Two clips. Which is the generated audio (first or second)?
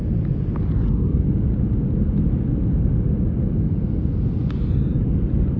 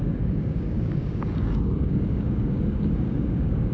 second